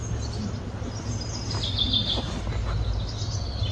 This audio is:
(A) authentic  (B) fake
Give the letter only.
A